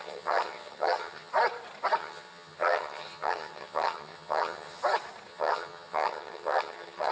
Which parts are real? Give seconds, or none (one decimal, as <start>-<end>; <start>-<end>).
1.3-2.0; 4.8-5.3